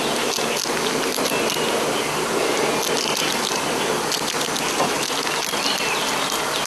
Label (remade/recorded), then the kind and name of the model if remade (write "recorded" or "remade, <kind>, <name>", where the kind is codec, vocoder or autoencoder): recorded